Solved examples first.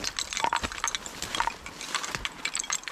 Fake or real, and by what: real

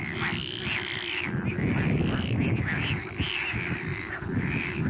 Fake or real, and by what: fake, vocoder, BigVGAN v2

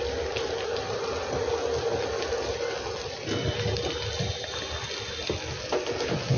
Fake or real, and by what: real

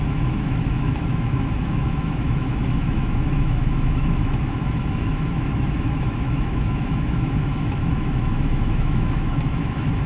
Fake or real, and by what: fake, autoencoder, DAC-VAE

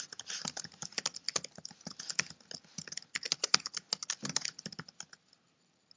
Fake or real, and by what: real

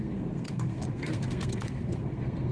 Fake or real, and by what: fake, codec, SNAC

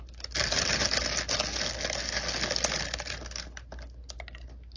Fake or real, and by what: real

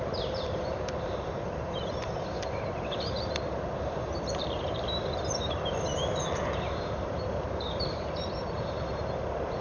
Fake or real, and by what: fake, vocoder, BigVGAN v2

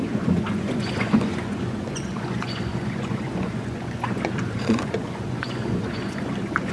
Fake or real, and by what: fake, vocoder, Vocos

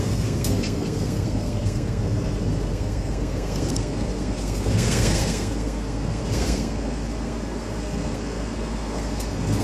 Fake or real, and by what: fake, codec, SNAC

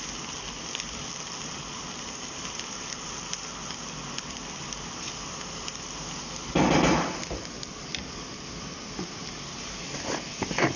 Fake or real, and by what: real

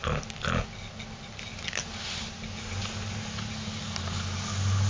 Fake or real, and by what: real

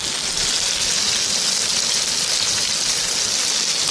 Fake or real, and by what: real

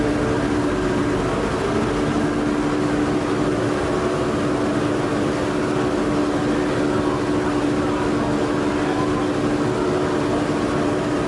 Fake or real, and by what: real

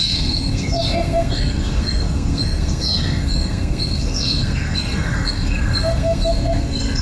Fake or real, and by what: fake, codec, SNAC